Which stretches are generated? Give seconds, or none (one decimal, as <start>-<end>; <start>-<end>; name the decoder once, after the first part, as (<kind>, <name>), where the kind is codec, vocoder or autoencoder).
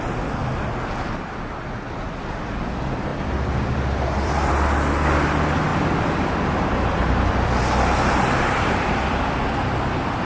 3.1-4.5 (vocoder, BigVGAN v2); 5.7-9.2